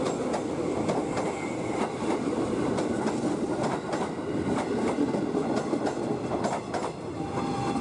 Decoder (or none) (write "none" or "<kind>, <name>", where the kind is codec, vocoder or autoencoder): none